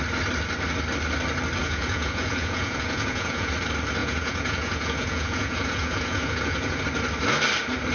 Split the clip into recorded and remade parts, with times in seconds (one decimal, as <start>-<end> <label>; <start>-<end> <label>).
0.0-1.6 recorded; 1.6-3.5 remade; 3.5-4.0 recorded; 4.0-6.8 remade; 6.8-7.9 recorded